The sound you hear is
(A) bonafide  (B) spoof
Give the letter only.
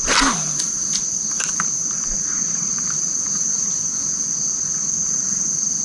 A